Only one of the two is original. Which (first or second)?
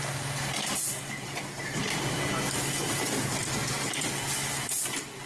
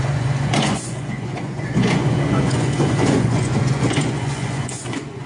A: first